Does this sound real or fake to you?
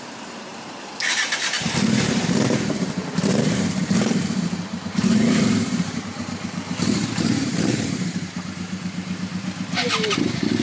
fake